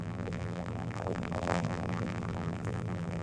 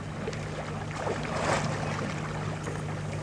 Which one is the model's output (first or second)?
first